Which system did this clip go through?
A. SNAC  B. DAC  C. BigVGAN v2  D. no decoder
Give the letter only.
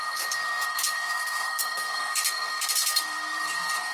A